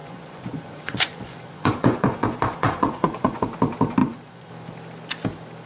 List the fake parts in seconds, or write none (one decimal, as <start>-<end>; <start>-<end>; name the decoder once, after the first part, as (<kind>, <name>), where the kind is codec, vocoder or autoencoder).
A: 0.0-3.4 (vocoder, Vocos); 4.0-4.5